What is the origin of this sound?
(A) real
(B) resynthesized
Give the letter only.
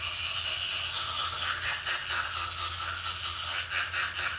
A